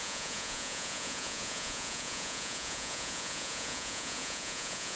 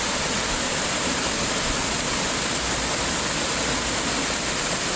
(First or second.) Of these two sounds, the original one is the second